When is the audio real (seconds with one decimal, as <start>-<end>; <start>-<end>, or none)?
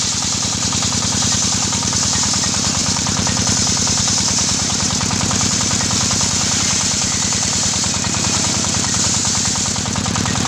9.2-9.8